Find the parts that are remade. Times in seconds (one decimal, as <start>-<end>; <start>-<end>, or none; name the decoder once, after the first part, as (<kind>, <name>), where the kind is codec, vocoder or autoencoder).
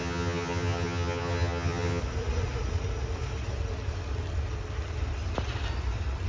0.0-2.0 (vocoder, HiFi-GAN)